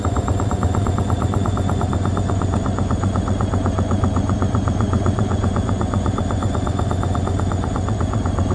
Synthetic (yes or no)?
yes